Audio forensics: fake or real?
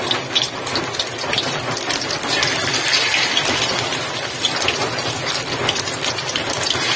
real